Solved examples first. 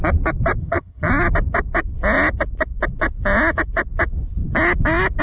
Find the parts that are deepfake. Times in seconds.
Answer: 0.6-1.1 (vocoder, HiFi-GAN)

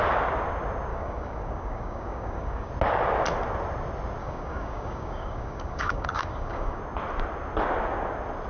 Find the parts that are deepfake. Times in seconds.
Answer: 0.9-2.7 (codec, DAC); 4.2-6.8